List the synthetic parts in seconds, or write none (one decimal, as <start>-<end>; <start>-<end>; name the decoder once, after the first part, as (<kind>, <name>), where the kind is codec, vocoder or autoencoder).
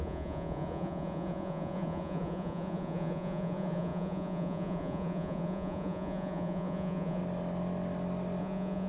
0.0-7.2 (vocoder, Vocos); 8.4-8.9